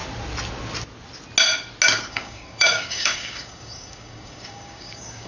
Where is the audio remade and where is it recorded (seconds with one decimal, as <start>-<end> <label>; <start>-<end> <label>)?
0.0-2.1 recorded; 2.1-5.3 remade